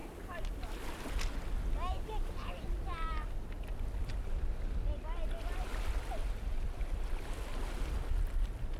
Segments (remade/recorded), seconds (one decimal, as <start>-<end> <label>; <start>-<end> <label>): 0.0-8.8 recorded